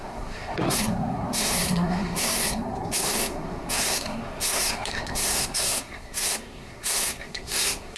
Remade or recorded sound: remade